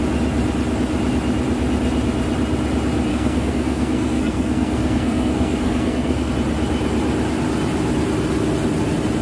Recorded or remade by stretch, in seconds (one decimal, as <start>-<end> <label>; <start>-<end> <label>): 0.0-3.1 recorded; 3.1-6.3 remade; 6.3-9.2 recorded